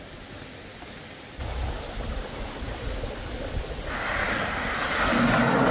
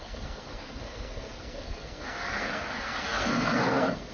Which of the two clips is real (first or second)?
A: first